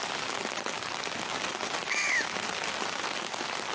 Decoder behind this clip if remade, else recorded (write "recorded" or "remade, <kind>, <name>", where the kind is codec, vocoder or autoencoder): recorded